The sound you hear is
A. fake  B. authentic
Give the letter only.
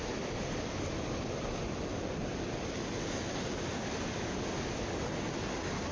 B